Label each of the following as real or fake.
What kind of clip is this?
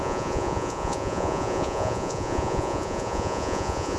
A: fake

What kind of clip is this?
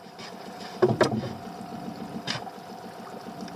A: real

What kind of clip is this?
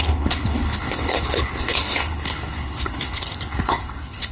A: fake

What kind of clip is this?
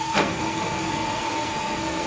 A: fake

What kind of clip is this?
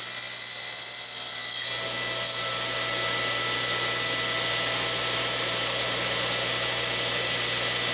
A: real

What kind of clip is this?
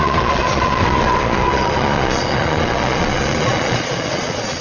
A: fake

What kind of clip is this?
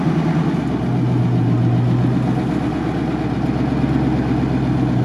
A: real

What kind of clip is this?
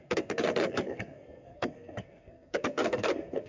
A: fake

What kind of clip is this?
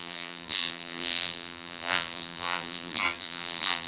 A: fake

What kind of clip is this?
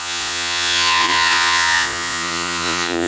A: fake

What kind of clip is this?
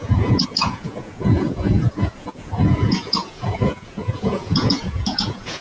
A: fake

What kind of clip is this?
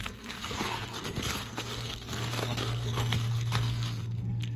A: fake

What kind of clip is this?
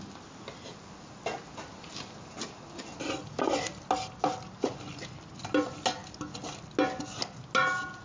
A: real